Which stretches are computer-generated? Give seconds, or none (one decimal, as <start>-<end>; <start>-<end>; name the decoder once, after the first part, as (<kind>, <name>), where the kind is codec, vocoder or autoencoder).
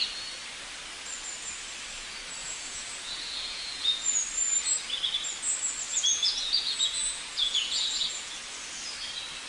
2.4-4.2 (vocoder, Vocos); 5.9-8.4